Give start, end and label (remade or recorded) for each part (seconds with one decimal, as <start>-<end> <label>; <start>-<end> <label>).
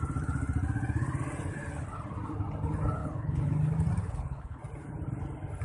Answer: 0.0-3.0 recorded; 3.0-3.5 remade; 3.5-4.0 recorded; 4.0-4.6 remade; 4.6-5.6 recorded